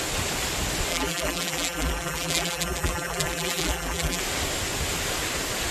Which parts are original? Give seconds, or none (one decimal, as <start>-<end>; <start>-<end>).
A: 0.0-0.9; 4.2-5.7